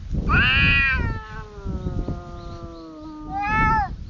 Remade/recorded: recorded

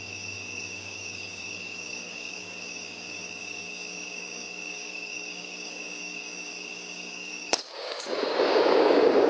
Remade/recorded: remade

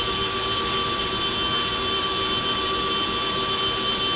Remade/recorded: recorded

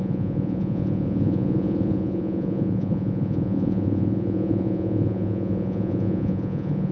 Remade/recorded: remade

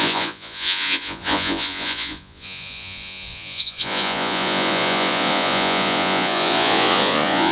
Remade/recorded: remade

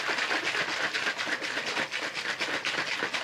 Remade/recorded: recorded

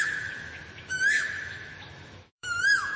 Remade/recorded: remade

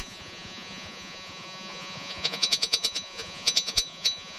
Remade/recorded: remade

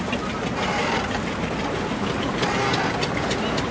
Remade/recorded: recorded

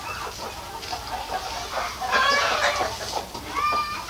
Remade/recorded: recorded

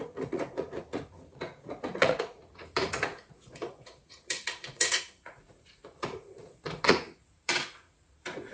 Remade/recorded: remade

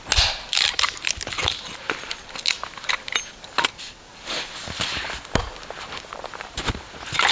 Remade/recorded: recorded